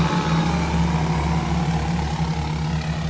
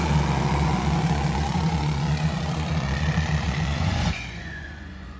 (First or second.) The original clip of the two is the first